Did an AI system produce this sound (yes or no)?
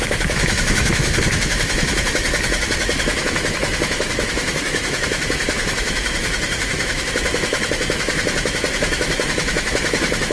yes